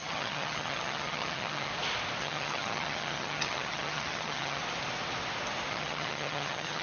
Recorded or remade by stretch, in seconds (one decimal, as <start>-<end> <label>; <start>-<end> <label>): 0.0-1.7 remade; 1.7-2.2 recorded; 2.2-4.6 remade; 4.6-5.7 recorded; 5.7-6.8 remade